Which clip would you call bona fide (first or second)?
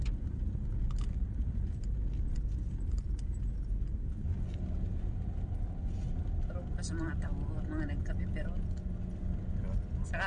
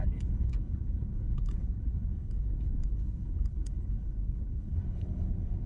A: first